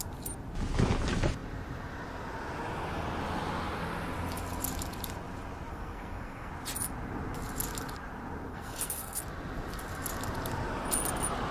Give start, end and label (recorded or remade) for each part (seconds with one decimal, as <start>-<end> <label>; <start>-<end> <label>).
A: 0.0-5.7 recorded; 5.7-6.5 remade; 6.5-8.5 recorded; 8.5-9.2 remade; 9.2-11.5 recorded